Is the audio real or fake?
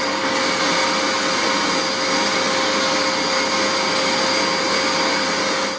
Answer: real